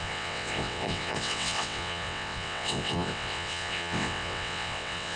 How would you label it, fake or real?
fake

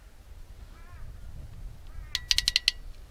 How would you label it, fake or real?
real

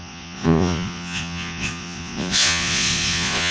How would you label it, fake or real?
fake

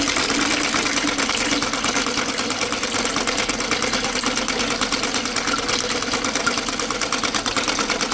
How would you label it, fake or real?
real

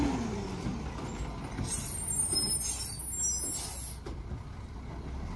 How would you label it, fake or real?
real